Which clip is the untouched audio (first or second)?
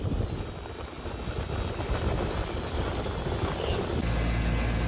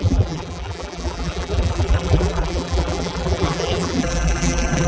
first